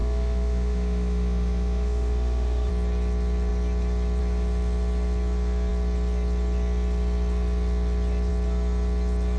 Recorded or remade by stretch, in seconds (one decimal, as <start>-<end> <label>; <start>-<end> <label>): 0.0-2.7 remade; 2.7-9.4 recorded

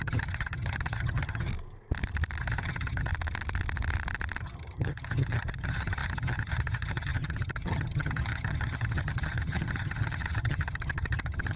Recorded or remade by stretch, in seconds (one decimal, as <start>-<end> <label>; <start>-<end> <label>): 0.0-1.5 remade; 1.5-2.4 recorded; 2.4-3.1 remade; 3.1-4.4 recorded; 4.4-11.6 remade

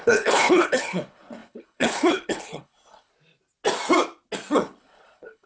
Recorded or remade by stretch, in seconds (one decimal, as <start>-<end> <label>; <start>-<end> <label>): 0.0-3.1 remade; 3.1-4.5 recorded; 4.5-5.5 remade

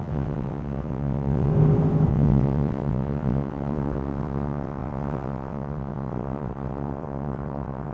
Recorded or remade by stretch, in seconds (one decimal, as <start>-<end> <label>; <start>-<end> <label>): 0.0-1.5 remade; 1.5-2.1 recorded; 2.1-7.9 remade

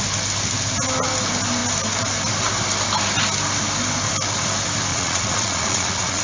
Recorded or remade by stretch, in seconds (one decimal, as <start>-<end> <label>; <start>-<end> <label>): 0.0-4.9 recorded; 4.9-6.2 remade

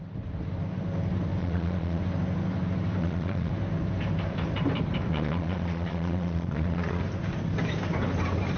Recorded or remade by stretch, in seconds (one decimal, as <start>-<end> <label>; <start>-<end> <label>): 0.0-1.4 recorded; 1.4-2.0 remade; 2.0-3.0 recorded; 3.0-3.5 remade; 3.5-5.1 recorded; 5.1-7.0 remade; 7.0-8.6 recorded

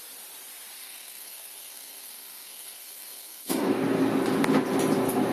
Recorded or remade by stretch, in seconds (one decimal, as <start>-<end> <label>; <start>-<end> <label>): 0.0-0.8 recorded; 0.8-3.7 remade; 3.7-5.3 recorded